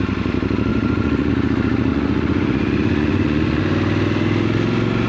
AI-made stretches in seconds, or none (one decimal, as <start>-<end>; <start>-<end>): 0.7-1.3; 1.9-3.6